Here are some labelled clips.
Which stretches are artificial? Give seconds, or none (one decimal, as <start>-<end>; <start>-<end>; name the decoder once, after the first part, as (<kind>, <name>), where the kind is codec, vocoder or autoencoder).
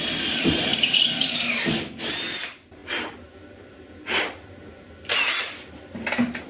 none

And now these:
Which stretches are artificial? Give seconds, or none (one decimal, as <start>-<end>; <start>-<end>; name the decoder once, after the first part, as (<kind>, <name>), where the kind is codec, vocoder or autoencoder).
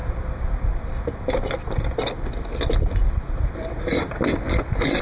none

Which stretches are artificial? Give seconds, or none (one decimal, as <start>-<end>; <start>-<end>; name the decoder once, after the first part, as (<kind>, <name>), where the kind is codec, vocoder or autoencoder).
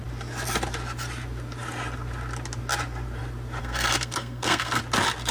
3.6-4.8 (codec, SNAC)